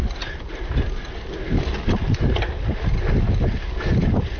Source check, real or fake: real